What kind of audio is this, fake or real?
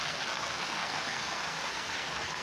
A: fake